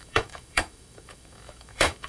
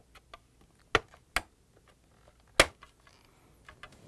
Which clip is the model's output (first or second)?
first